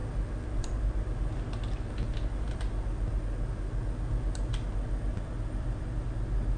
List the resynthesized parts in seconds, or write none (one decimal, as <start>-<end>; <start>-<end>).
none